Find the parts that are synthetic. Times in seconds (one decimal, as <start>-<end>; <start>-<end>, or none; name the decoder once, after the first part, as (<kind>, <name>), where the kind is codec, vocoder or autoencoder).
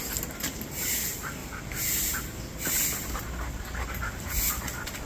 none